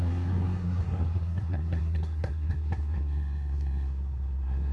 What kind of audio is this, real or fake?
fake